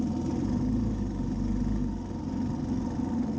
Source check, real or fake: real